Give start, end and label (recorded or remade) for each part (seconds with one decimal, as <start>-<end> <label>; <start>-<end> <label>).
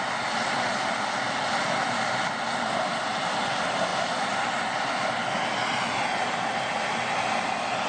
0.0-7.9 recorded